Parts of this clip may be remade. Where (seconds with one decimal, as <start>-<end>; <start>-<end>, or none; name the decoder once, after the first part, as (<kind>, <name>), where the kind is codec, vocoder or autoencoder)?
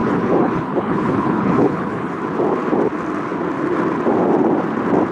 0.0-2.2 (codec, HILCodec)